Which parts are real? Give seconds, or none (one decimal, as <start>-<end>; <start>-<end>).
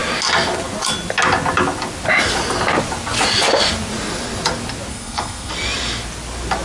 0.0-4.9; 5.5-6.6